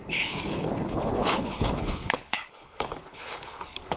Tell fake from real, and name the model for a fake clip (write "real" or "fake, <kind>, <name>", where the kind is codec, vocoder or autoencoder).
fake, codec, HILCodec